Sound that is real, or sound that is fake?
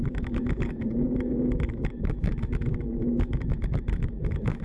fake